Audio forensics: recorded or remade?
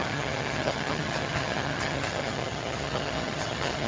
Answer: remade